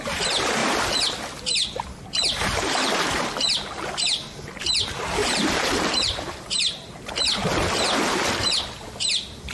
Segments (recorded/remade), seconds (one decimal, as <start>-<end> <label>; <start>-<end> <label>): 0.0-2.4 recorded; 2.4-3.3 remade; 3.3-5.2 recorded; 5.2-7.1 remade; 7.1-9.5 recorded